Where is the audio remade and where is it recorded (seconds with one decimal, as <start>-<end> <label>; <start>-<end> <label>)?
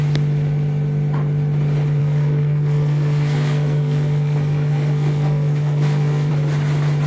0.0-2.0 recorded; 2.0-6.3 remade; 6.3-7.1 recorded